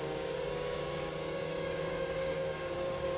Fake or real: fake